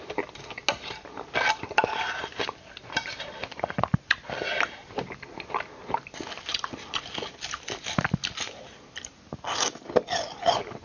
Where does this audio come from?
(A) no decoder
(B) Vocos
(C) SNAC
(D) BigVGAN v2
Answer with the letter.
A